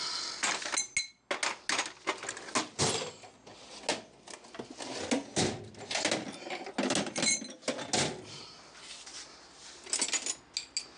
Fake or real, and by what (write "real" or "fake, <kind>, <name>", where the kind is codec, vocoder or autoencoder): real